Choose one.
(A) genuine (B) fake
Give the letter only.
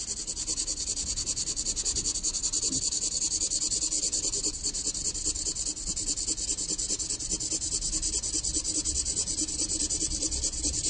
A